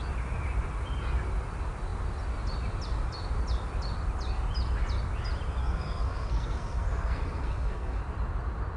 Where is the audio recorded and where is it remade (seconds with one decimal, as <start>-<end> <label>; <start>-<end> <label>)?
0.0-5.6 recorded; 5.6-8.0 remade; 8.0-8.8 recorded